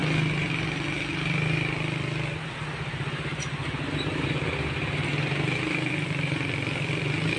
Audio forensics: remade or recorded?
recorded